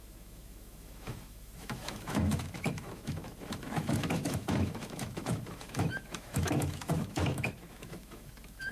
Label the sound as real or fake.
fake